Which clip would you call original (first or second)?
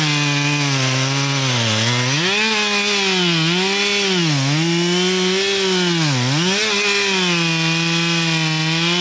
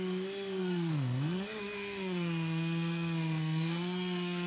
first